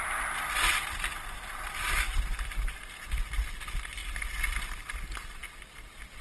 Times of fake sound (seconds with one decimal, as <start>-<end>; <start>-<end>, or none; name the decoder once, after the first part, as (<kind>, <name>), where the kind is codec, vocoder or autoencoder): none